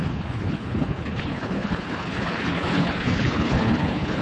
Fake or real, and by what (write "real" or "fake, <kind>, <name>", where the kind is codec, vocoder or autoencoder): fake, codec, HILCodec